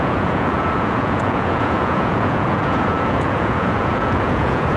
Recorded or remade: remade